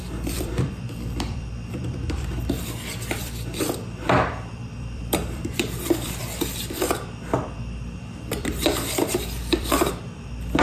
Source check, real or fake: fake